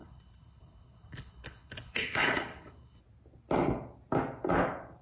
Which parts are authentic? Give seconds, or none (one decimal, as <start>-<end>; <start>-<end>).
3.0-5.0